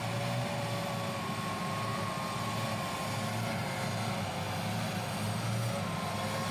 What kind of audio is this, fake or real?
real